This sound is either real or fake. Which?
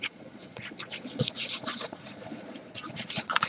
fake